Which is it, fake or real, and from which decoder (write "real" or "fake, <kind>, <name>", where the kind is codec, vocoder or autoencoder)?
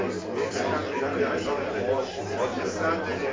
real